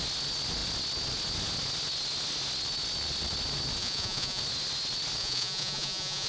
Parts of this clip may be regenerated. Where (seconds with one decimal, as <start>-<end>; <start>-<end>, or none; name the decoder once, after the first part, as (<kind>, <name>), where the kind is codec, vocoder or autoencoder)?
3.8-4.4 (vocoder, Vocos); 5.2-6.3